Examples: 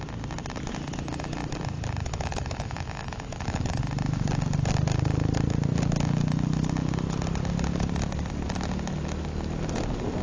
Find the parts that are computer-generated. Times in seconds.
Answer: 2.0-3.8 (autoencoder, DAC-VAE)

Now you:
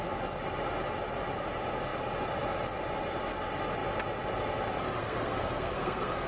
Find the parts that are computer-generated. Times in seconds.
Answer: 5.0-6.3 (codec, SNAC)

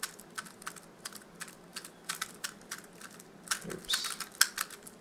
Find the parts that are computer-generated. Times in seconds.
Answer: none

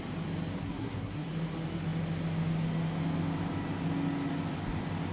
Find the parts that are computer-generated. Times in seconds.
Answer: 0.6-1.3 (codec, SNAC)